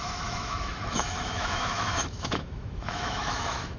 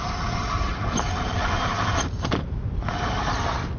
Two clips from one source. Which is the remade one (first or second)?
first